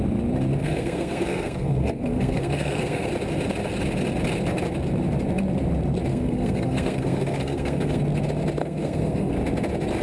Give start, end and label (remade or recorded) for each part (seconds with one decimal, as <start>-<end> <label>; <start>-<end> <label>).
0.0-0.6 recorded; 0.6-3.1 remade; 3.1-6.1 recorded; 6.1-8.0 remade; 8.0-8.6 recorded; 8.6-9.3 remade; 9.3-10.0 recorded